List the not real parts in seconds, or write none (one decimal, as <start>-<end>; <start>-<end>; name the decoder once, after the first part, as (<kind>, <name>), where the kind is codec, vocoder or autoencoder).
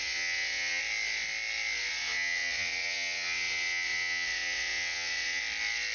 0.0-0.8 (vocoder, WaveNeXt); 1.9-5.4